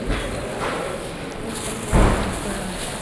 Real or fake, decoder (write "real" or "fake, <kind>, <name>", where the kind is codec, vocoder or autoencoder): real